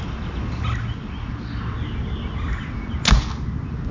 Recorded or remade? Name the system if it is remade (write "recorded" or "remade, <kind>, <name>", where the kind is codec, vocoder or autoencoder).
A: recorded